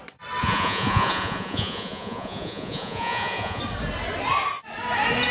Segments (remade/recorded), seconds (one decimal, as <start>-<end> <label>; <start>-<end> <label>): 0.0-0.4 recorded; 0.4-3.6 remade; 3.6-5.3 recorded